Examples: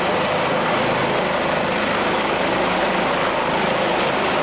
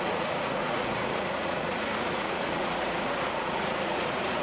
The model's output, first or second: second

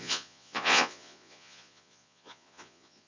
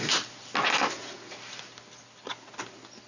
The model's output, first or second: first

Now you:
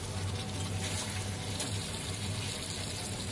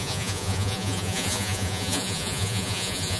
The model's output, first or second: second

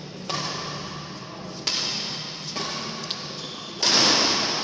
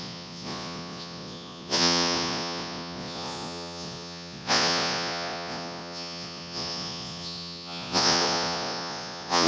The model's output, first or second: second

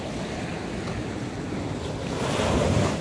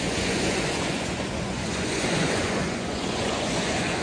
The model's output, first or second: second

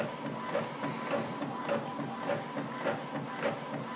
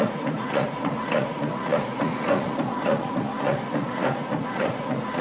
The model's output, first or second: second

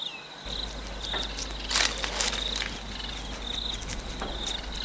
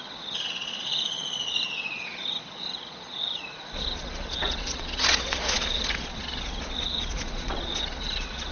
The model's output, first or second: second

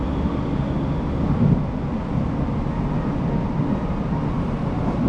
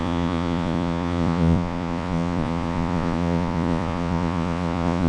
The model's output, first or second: second